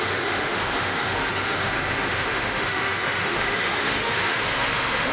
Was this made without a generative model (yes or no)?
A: no